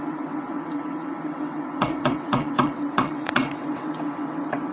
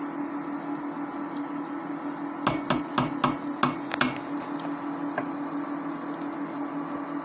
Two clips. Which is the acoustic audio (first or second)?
second